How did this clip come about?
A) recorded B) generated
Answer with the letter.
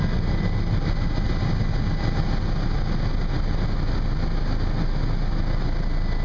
A